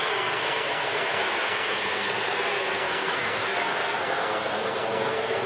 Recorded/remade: remade